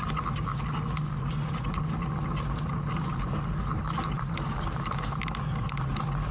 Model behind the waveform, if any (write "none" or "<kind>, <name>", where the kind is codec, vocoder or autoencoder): none